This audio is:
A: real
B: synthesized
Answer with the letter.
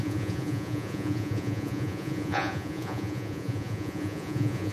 B